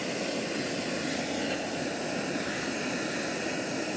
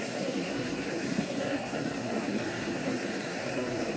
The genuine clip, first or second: first